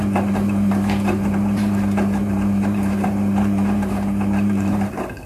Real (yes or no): no